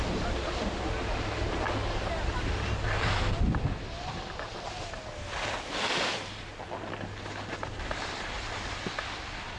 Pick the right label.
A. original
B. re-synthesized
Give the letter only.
A